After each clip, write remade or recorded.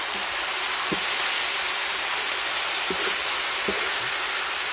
recorded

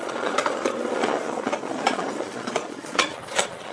remade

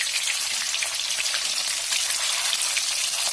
recorded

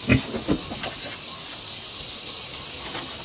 recorded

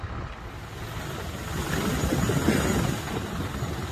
recorded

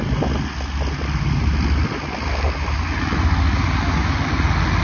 recorded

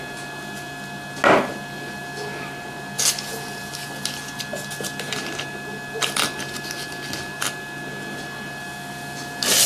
recorded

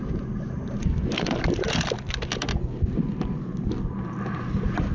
recorded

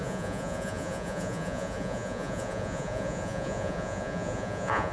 remade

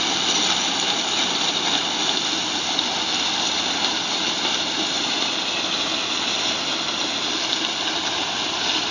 recorded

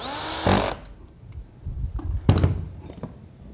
recorded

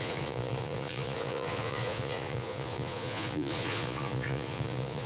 remade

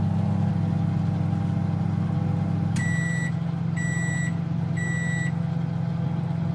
recorded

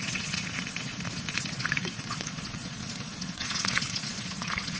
remade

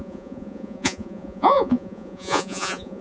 remade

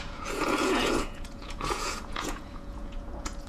remade